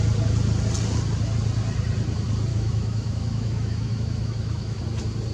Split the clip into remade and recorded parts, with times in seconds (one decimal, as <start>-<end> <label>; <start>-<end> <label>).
0.0-2.5 recorded; 2.5-4.8 remade; 4.8-5.3 recorded